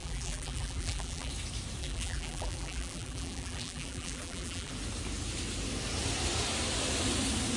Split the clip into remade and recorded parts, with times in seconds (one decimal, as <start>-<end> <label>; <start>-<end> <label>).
0.0-1.3 remade; 1.3-1.8 recorded; 1.8-4.7 remade; 4.7-7.6 recorded